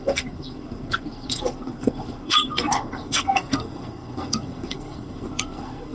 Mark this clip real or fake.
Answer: fake